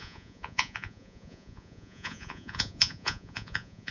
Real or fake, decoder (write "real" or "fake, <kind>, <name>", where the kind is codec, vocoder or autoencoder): fake, vocoder, Vocos